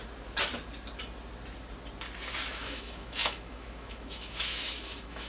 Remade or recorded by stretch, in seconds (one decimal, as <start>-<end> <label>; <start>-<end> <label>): 0.0-2.5 recorded; 2.5-5.3 remade